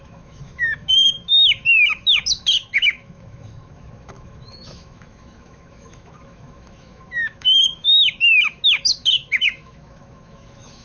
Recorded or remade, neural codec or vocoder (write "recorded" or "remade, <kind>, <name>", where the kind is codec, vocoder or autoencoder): remade, autoencoder, DAC-VAE